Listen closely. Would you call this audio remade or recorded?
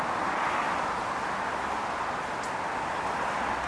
recorded